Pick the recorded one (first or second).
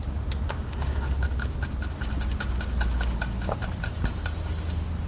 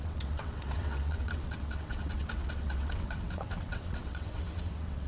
first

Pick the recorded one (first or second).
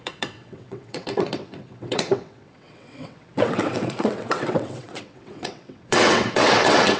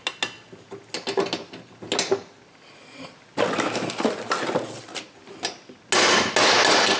second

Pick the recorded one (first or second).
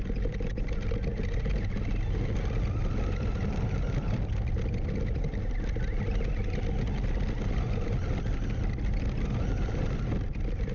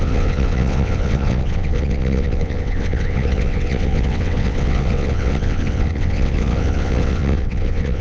first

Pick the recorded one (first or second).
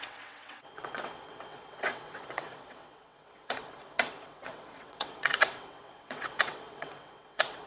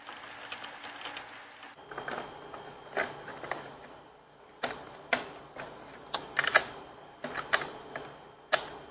second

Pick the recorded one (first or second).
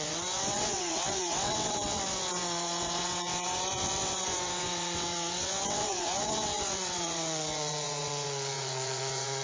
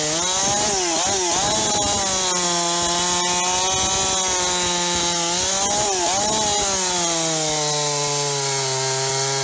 second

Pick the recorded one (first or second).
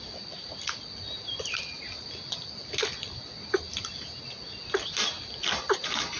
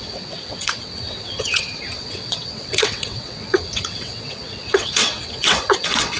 first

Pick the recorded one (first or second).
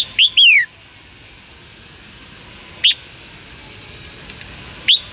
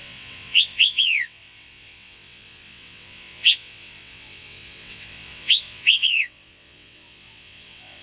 first